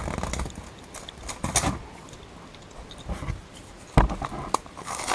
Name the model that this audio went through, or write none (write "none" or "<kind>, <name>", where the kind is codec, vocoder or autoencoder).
none